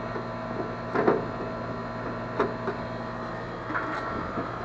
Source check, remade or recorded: recorded